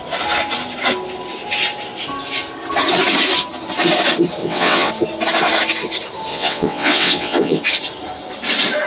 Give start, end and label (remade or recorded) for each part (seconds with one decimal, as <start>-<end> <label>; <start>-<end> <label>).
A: 0.0-4.4 recorded; 4.4-4.9 remade; 4.9-6.3 recorded; 6.3-7.6 remade; 7.6-8.9 recorded